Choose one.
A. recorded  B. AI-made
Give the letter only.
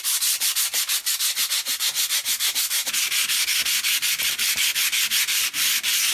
A